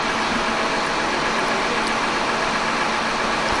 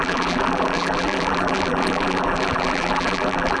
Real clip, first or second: first